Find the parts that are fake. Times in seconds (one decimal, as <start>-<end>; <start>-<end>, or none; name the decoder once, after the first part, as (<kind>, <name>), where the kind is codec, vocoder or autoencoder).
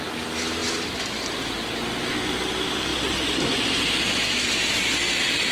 none